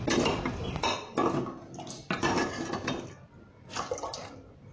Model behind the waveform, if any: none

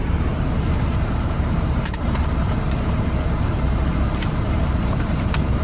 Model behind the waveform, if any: vocoder, BigVGAN v2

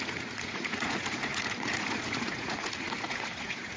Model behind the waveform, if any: vocoder, Vocos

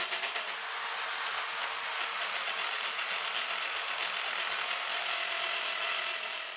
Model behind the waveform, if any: none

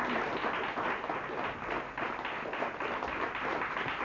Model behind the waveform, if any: none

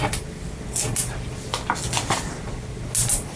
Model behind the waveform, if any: none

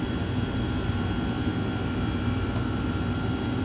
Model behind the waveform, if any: none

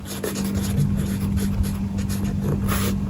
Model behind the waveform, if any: none